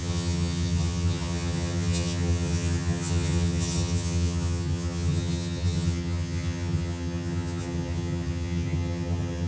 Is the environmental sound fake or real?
fake